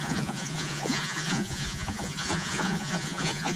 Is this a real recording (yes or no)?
no